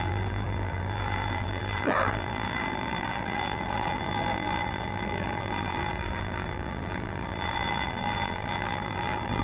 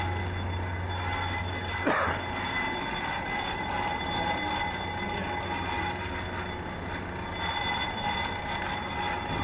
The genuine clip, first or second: second